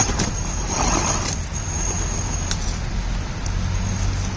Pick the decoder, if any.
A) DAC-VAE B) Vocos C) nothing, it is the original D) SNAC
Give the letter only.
C